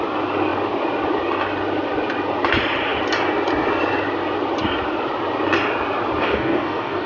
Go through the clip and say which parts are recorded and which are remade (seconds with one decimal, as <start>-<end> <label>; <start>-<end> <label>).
0.0-6.2 recorded; 6.2-7.1 remade